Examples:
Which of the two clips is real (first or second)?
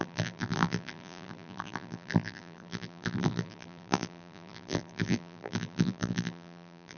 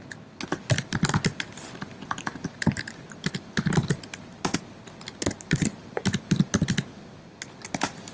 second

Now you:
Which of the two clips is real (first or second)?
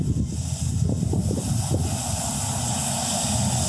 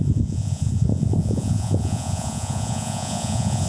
first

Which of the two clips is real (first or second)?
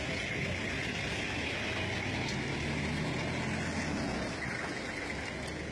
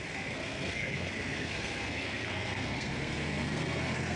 first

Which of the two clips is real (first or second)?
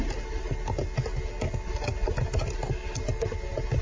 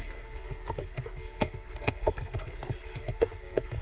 first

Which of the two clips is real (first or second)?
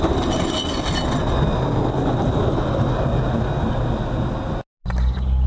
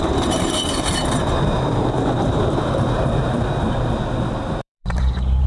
first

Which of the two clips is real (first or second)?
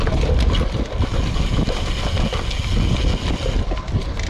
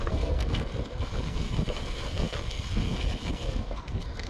first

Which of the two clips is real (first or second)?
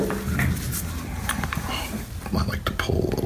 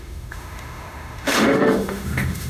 first